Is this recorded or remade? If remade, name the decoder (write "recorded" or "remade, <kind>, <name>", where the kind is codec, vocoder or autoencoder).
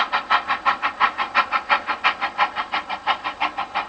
recorded